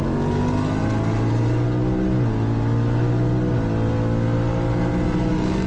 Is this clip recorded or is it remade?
recorded